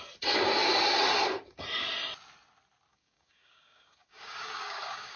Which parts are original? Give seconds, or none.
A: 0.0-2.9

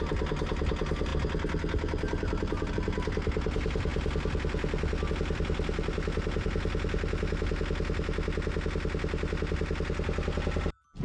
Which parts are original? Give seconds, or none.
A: 0.0-11.0

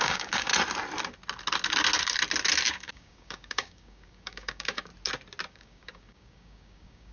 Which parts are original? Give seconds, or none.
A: 0.5-2.7; 4.9-5.5

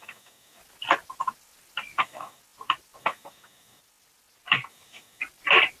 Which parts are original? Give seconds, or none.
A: 0.6-2.0; 2.4-3.0; 3.8-4.7; 5.2-5.8

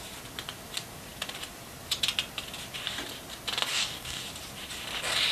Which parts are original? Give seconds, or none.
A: 0.0-3.7; 4.2-5.3

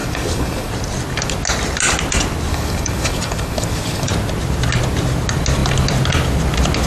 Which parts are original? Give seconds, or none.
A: 0.7-2.5; 4.1-6.9